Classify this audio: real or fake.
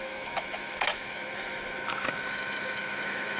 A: fake